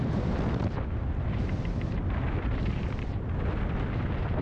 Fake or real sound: real